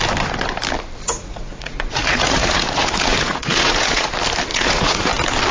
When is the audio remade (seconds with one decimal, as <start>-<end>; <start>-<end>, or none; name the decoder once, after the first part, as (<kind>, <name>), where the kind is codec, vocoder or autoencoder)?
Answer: 1.0-4.1 (vocoder, Vocos); 4.5-5.1